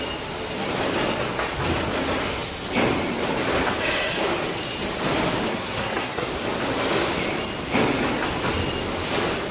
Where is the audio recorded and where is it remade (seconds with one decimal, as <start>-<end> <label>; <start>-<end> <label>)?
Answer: 0.0-5.5 recorded; 5.5-6.3 remade; 6.3-9.5 recorded